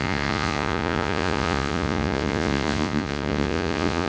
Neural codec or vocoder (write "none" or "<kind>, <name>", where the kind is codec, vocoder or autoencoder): vocoder, Vocos